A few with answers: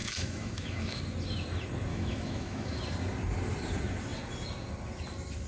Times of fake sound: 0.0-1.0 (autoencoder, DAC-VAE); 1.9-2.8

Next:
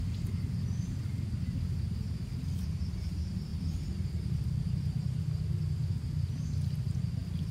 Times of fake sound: none

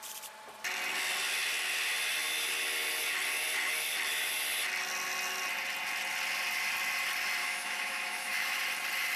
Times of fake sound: 7.4-8.6 (autoencoder, DAC-VAE)

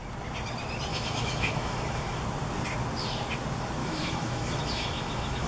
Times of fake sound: 0.9-2.2 (autoencoder, DAC-VAE); 3.8-5.5

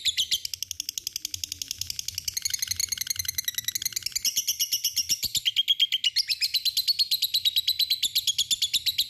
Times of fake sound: none

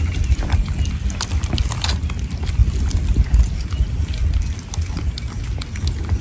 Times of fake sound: none

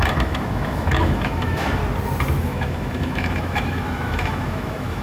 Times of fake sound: 0.0-1.8 (autoencoder, DAC-VAE); 2.4-5.0

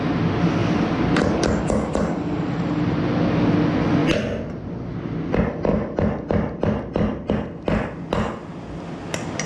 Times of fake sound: none